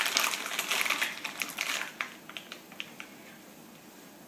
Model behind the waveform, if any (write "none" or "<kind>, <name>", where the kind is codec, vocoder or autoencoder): none